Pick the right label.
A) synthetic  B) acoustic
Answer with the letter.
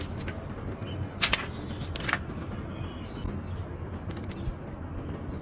B